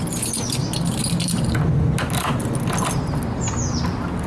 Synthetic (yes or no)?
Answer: no